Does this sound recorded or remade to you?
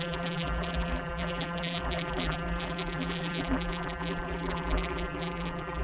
remade